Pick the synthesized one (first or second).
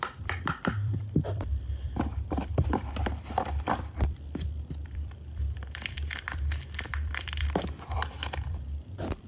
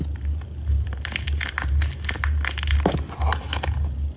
first